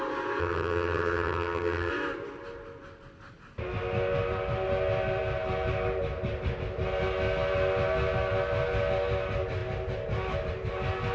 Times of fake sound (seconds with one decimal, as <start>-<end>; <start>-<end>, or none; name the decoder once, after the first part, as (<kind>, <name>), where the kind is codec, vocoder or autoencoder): 0.4-1.9 (vocoder, HiFi-GAN)